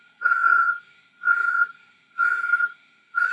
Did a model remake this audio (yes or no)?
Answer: yes